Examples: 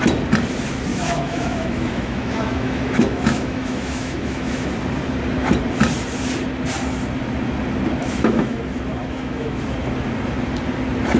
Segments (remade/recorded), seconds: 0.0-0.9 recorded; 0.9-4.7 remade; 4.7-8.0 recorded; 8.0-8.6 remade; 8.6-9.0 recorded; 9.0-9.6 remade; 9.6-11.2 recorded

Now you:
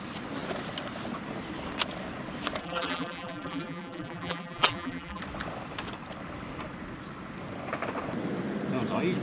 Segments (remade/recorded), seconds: 0.0-2.6 recorded; 2.6-5.2 remade; 5.2-9.2 recorded

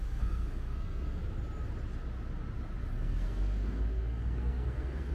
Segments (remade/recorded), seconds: 0.0-1.2 remade; 1.2-2.9 recorded; 2.9-5.1 remade

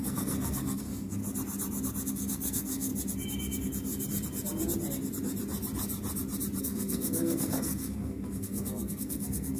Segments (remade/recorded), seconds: 0.0-1.2 remade; 1.2-2.1 recorded; 2.1-2.9 remade; 2.9-6.6 recorded; 6.6-9.6 remade

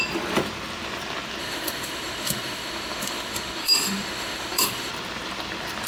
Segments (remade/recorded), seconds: 0.0-1.4 recorded; 1.4-4.9 remade; 4.9-5.9 recorded

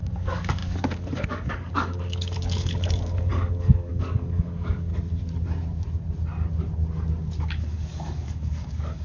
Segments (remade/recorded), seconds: 0.0-4.9 remade; 4.9-7.4 recorded; 7.4-9.0 remade

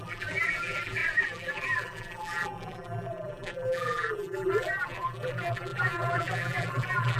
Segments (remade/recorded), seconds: 0.0-7.2 remade

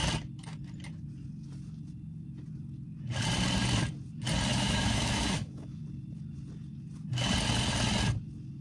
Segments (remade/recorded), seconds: 0.0-4.5 recorded; 4.5-5.8 remade; 5.8-8.6 recorded